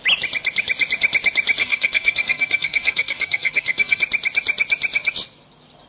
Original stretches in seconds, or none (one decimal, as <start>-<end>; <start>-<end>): 0.0-1.6; 4.0-5.9

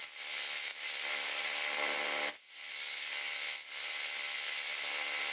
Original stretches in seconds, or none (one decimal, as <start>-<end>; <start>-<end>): 0.0-5.3

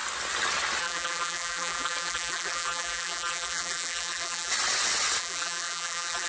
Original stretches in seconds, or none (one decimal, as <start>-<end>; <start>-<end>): 0.0-0.8; 4.5-5.2